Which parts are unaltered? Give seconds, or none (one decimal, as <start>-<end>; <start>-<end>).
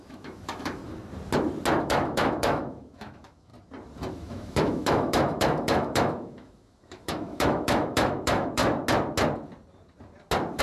0.8-1.8; 3.5-4.1; 8.6-10.6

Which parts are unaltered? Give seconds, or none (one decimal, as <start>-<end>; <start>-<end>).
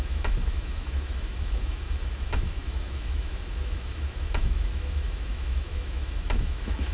none